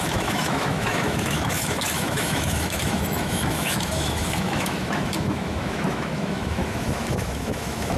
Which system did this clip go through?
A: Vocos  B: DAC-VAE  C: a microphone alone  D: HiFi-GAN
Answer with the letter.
B